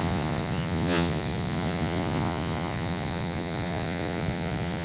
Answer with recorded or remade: remade